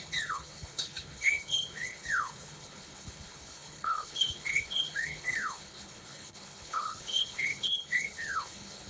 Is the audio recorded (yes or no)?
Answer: no